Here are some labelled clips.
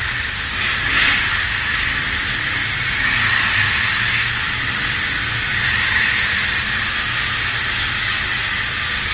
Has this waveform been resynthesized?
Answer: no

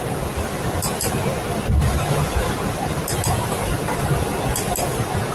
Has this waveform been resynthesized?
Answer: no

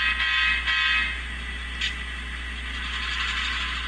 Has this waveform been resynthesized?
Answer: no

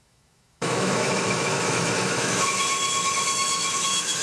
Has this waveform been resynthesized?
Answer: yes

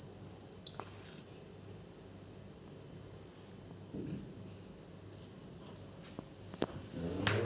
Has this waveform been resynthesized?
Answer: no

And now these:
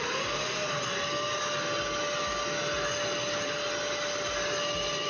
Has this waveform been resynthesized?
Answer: no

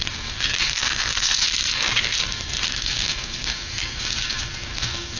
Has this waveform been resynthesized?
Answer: yes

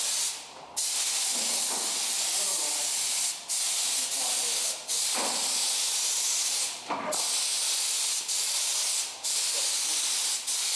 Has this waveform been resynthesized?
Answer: no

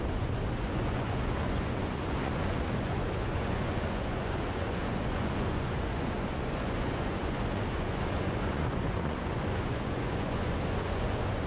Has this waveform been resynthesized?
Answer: yes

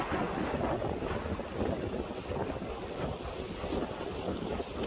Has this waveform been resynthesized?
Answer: no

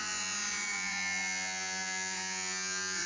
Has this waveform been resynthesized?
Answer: yes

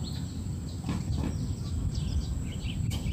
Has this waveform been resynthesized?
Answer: no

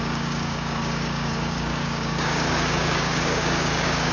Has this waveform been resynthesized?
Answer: yes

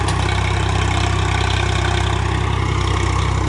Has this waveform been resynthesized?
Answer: no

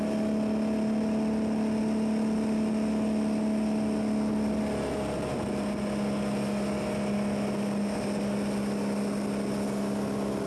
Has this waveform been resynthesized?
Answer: no